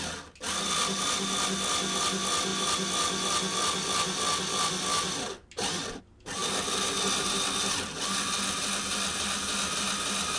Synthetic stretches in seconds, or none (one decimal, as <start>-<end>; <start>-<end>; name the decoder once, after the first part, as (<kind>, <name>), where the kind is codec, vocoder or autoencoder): none